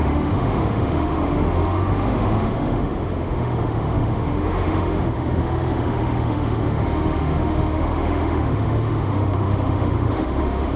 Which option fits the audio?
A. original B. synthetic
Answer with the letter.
B